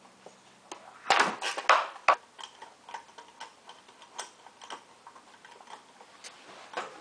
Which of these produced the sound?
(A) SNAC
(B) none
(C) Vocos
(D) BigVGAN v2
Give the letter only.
B